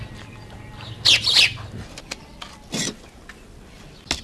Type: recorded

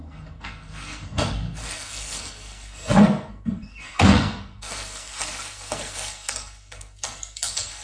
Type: remade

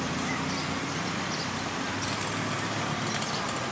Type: recorded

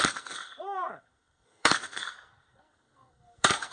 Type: remade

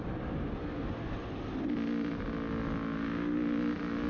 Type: recorded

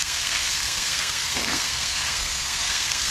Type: remade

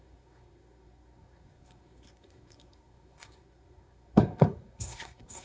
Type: remade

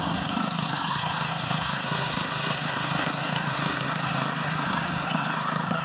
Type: remade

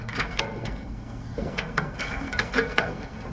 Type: remade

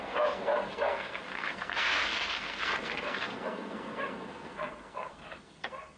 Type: remade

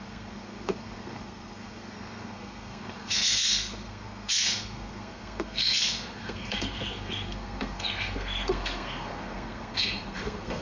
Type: remade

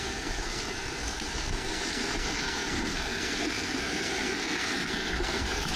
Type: remade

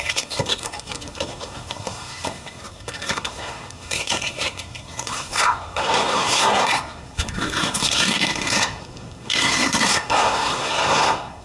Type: remade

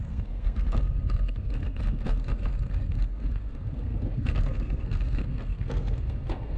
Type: remade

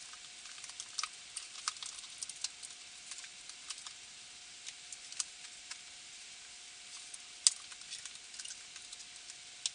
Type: recorded